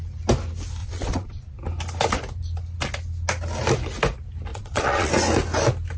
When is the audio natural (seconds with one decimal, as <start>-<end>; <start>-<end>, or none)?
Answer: 0.0-0.8; 1.5-4.5; 5.1-6.0